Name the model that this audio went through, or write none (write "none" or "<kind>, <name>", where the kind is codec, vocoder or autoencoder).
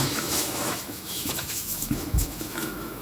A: autoencoder, DAC-VAE